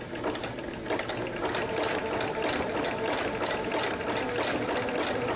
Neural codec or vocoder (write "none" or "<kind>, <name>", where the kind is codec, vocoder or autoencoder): none